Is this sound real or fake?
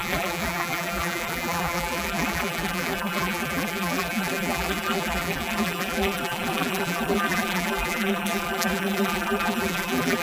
fake